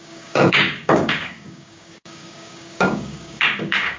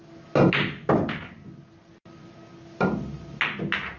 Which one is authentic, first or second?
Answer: second